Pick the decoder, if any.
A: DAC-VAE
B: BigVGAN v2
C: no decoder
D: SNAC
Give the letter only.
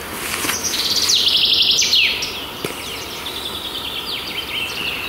C